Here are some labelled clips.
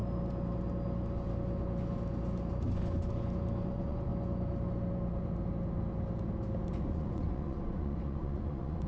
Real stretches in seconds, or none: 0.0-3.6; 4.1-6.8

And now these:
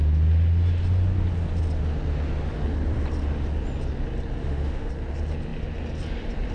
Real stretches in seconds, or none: 0.0-4.4; 4.9-6.5

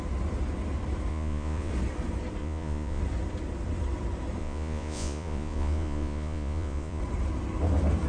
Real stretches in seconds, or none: 0.0-1.1; 1.7-2.4; 3.0-4.4; 7.0-8.1